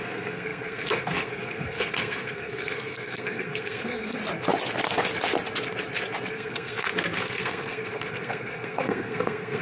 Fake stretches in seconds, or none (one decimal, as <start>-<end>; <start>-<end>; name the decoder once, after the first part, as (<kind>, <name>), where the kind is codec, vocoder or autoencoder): 0.0-4.2 (codec, SNAC); 6.3-9.6